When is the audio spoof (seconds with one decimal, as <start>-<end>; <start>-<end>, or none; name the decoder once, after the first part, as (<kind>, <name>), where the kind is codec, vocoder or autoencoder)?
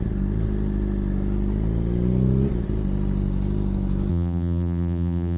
4.1-5.4 (vocoder, BigVGAN v2)